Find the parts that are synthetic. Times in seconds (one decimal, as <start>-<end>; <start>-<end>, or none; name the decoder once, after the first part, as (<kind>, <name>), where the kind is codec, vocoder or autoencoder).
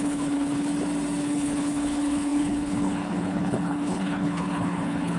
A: 0.0-0.7 (codec, HILCodec); 1.2-5.2